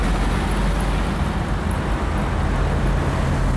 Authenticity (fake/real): real